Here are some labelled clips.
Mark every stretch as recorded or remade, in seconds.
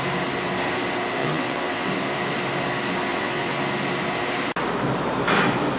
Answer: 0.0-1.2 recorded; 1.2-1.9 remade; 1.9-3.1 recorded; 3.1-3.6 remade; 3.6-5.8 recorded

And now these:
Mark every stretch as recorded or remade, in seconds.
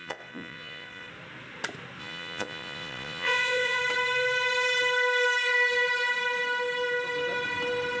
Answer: 0.0-1.1 remade; 1.1-2.0 recorded; 2.0-3.8 remade; 3.8-8.0 recorded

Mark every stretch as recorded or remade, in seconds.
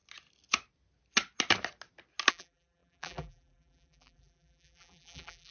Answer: 0.0-2.3 recorded; 2.3-5.5 remade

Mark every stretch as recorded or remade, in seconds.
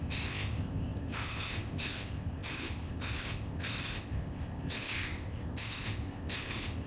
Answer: 0.0-6.9 remade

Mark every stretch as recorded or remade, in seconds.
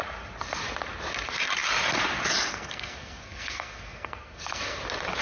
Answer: 0.0-2.5 recorded; 2.5-4.8 remade; 4.8-5.2 recorded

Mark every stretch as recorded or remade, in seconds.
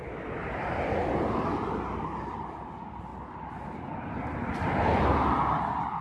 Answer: 0.0-6.0 recorded